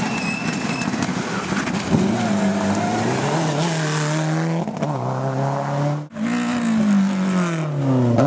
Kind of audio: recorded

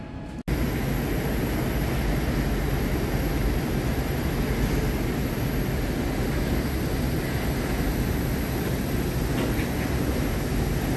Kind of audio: recorded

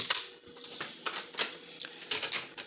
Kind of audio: recorded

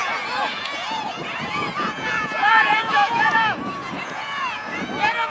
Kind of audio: remade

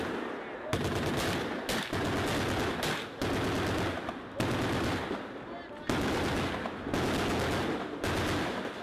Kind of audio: recorded